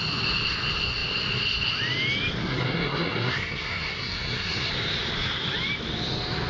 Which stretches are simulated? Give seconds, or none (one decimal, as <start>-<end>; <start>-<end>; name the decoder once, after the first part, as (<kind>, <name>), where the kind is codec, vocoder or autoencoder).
2.4-4.7 (codec, SNAC)